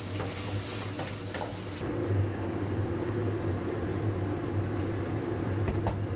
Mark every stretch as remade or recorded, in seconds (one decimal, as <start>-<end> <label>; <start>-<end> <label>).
0.0-2.0 recorded; 2.0-3.4 remade; 3.4-6.2 recorded